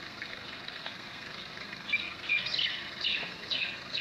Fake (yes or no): yes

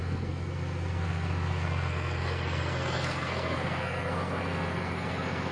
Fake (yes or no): yes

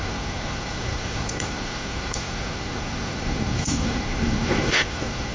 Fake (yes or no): yes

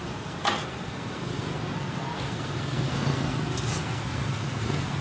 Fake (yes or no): yes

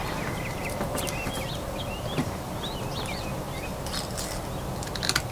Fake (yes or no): no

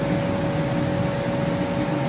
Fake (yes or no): no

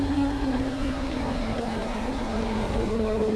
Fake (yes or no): yes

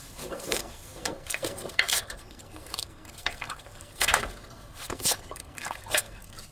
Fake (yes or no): yes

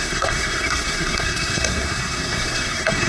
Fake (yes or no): yes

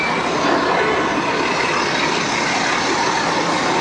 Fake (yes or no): no